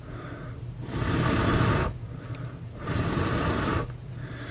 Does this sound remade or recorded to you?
remade